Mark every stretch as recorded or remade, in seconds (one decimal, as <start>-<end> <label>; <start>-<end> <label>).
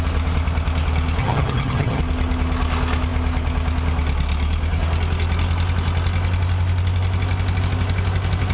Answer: 0.0-1.2 recorded; 1.2-2.0 remade; 2.0-8.5 recorded